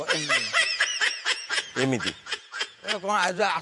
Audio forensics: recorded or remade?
remade